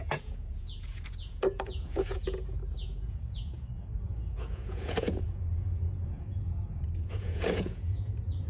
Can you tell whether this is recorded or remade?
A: remade